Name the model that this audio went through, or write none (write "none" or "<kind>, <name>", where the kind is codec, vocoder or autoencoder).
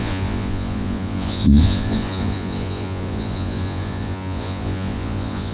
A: vocoder, Vocos